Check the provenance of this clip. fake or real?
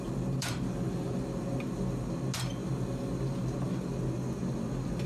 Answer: real